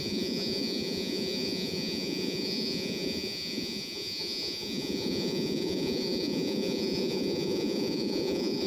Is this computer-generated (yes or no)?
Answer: yes